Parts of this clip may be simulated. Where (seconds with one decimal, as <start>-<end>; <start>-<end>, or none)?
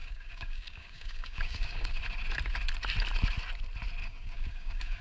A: 0.0-2.0; 4.0-5.0